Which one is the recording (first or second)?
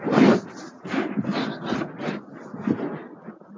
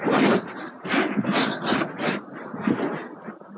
first